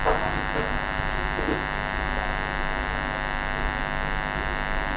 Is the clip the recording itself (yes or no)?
yes